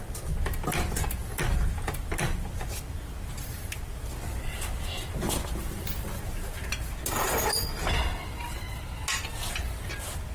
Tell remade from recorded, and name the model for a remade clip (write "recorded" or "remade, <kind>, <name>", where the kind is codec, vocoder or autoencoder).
recorded